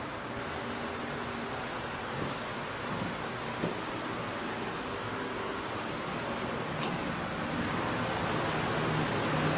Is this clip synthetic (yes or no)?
no